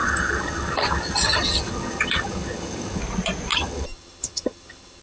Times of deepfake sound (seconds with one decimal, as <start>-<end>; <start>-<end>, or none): 0.0-3.0; 3.5-5.0